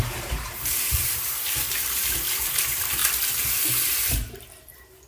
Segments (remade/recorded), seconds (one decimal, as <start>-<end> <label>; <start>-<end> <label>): 0.0-3.0 remade; 3.0-4.1 recorded; 4.1-5.1 remade